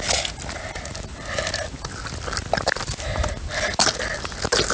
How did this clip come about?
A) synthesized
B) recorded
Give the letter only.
B